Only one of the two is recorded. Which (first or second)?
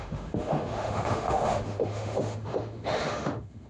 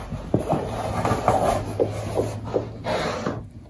second